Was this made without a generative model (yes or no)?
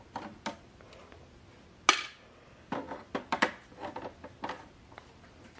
yes